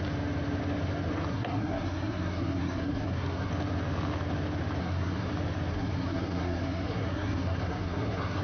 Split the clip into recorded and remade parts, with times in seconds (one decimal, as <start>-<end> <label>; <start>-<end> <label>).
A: 0.0-1.3 recorded; 1.3-3.5 remade; 3.5-4.8 recorded; 4.8-5.3 remade; 5.3-5.7 recorded; 5.7-8.4 remade